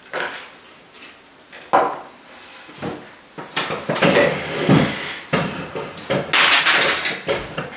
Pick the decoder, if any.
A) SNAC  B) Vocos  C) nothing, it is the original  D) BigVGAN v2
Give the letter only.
C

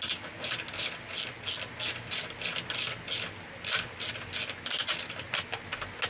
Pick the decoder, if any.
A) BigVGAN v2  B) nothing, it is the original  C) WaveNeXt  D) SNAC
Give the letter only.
B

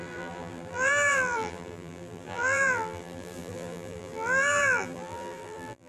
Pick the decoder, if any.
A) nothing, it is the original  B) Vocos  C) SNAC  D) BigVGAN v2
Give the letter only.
D